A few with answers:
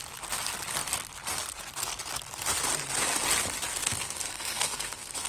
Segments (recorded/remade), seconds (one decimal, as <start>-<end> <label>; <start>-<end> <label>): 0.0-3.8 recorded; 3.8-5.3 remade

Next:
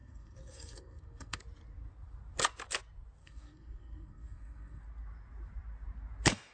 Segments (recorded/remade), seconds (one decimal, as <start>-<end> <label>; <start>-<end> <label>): 0.0-1.4 remade; 1.4-3.2 recorded; 3.2-4.8 remade; 4.8-6.5 recorded

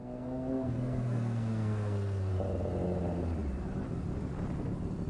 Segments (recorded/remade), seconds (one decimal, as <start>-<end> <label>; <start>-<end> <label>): 0.0-2.3 remade; 2.3-5.1 recorded